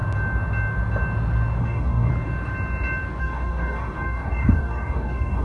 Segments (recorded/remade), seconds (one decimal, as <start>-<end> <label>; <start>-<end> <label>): 0.0-1.6 recorded; 1.6-2.1 remade; 2.1-3.2 recorded; 3.2-5.4 remade